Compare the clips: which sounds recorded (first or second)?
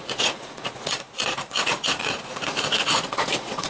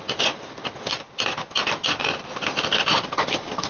second